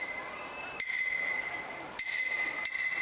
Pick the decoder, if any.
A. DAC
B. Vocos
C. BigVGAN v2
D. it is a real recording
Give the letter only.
D